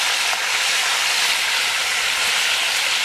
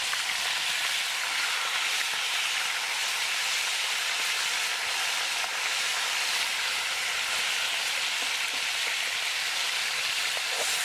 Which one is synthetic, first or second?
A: second